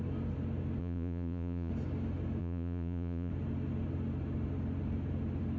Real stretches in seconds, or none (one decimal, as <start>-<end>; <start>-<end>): 0.0-0.8; 1.7-2.4; 3.3-5.6